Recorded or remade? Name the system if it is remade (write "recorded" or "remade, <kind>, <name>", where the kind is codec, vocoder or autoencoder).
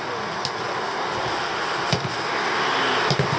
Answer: recorded